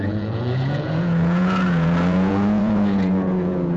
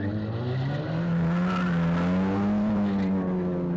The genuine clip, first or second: second